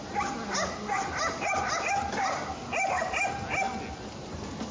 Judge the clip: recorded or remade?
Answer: recorded